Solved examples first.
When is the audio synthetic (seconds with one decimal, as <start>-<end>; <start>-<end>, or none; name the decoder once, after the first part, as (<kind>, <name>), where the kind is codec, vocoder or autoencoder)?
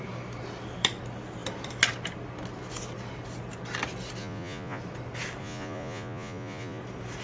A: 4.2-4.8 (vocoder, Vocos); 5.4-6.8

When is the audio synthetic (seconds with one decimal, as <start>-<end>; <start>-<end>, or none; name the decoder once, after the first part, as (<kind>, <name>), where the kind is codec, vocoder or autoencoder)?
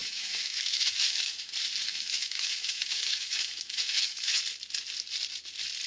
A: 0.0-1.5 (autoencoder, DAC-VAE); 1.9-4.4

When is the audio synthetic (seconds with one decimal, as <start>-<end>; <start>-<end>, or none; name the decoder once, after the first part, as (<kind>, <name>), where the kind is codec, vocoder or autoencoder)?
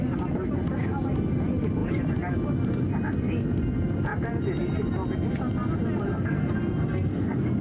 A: 6.1-7.6 (codec, SNAC)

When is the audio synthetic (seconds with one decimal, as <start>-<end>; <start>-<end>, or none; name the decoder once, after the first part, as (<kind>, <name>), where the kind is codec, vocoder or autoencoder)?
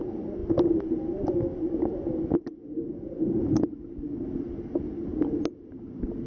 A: none